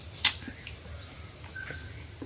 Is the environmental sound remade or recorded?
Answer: recorded